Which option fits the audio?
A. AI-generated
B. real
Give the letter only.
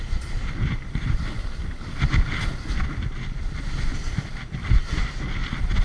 B